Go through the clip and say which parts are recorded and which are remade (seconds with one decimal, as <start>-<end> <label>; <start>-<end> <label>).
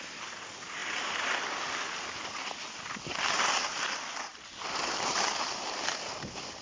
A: 0.0-0.8 recorded; 0.8-3.2 remade; 3.2-4.3 recorded; 4.3-6.6 remade